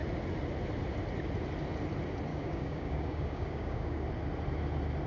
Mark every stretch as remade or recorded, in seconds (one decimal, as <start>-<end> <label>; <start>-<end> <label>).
0.0-2.3 recorded; 2.3-4.1 remade; 4.1-5.1 recorded